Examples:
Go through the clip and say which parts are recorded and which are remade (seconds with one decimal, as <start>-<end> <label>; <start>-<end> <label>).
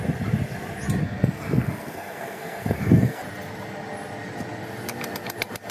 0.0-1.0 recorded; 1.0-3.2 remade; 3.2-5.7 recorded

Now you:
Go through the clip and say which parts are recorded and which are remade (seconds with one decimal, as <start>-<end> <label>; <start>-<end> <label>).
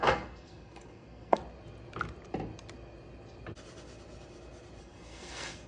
0.0-1.4 remade; 1.4-4.8 recorded; 4.8-5.7 remade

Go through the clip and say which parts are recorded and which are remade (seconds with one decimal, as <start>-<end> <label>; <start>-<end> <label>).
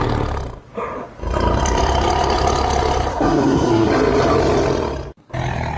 0.0-3.1 recorded; 3.1-3.9 remade; 3.9-5.8 recorded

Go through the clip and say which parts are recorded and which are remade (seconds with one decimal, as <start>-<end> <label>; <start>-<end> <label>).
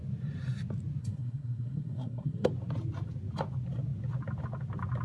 0.0-1.0 recorded; 1.0-2.5 remade; 2.5-5.0 recorded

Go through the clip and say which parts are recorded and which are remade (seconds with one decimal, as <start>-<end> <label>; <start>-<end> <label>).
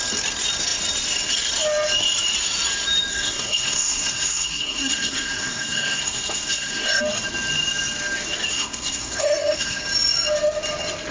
0.0-3.1 recorded; 3.1-7.0 remade; 7.0-8.5 recorded; 8.5-9.8 remade; 9.8-11.1 recorded